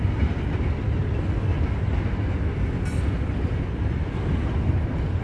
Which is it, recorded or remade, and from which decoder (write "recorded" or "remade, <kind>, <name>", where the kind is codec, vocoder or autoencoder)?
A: recorded